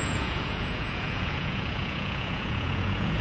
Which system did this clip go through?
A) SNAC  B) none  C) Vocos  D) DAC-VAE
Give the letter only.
C